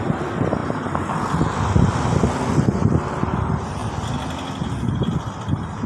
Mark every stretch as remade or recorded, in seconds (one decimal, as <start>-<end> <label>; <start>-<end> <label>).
0.0-5.9 recorded